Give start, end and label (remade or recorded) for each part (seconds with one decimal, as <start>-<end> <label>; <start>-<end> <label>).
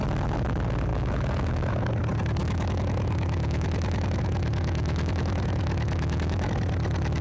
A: 0.0-0.9 recorded; 0.9-1.9 remade; 1.9-2.4 recorded; 2.4-6.5 remade; 6.5-7.2 recorded